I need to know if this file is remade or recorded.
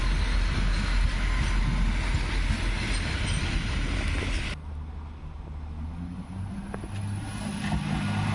recorded